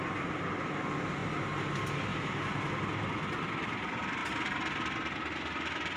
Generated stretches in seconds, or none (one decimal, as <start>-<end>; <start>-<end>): 2.1-2.7